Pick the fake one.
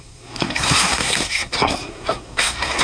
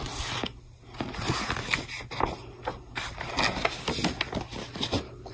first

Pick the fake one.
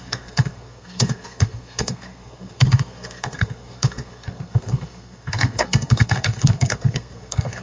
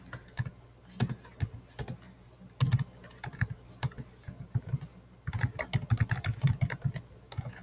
first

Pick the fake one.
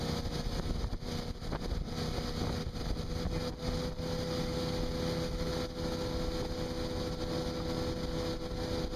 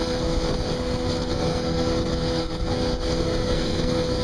second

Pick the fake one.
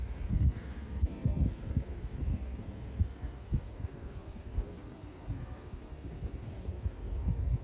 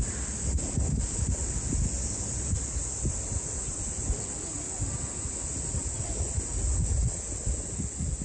first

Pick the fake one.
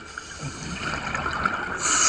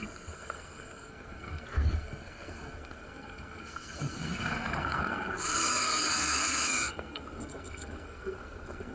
second